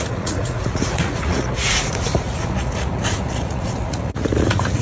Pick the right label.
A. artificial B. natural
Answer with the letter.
A